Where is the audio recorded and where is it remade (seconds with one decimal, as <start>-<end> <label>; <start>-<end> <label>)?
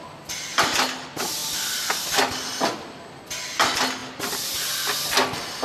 0.0-5.6 recorded